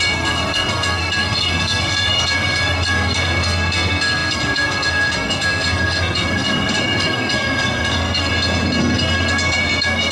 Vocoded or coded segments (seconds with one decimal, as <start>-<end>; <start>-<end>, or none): 0.0-8.3; 8.8-10.1

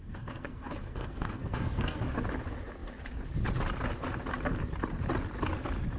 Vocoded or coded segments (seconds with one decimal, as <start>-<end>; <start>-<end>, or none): 0.0-2.0

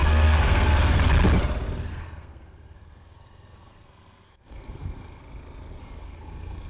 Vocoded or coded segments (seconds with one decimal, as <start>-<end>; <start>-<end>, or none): 0.0-1.0; 1.9-5.2; 5.8-6.7

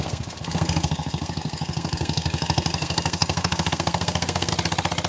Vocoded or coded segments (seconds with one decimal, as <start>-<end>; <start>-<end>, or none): 0.0-4.5